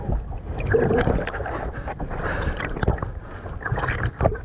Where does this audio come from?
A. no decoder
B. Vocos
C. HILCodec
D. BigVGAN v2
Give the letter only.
A